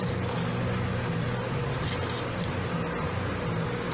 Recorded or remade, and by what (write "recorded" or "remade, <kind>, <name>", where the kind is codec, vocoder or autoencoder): recorded